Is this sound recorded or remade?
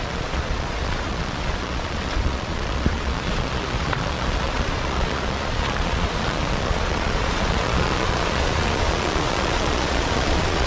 remade